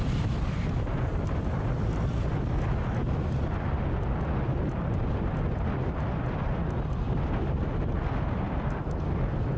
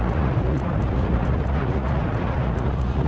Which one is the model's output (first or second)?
second